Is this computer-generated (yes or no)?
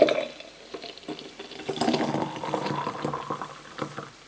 no